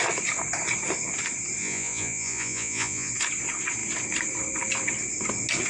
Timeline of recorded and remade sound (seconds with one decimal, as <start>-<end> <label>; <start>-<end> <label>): 0.0-1.6 recorded; 1.6-3.1 remade; 3.1-5.7 recorded

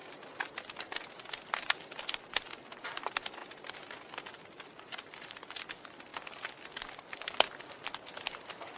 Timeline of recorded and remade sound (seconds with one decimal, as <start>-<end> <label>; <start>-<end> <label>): 0.0-3.4 recorded; 3.4-3.9 remade; 3.9-8.8 recorded

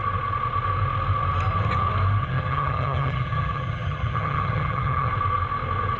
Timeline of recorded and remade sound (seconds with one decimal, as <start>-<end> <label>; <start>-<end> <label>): 0.0-2.2 recorded; 2.2-5.1 remade; 5.1-6.0 recorded

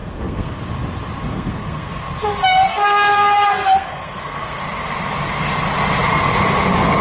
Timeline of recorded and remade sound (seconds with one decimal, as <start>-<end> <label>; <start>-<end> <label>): 0.0-0.6 remade; 0.6-1.3 recorded; 1.3-2.0 remade; 2.0-2.7 recorded; 2.7-4.6 remade; 4.6-7.0 recorded

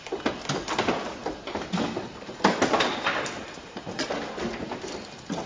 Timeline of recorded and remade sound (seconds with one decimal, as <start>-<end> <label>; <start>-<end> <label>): 0.0-5.5 recorded

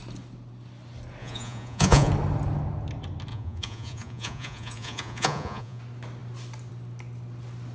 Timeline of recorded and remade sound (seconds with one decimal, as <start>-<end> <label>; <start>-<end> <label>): 0.0-1.2 recorded; 1.2-2.1 remade; 2.1-3.3 recorded; 3.3-5.8 remade; 5.8-7.7 recorded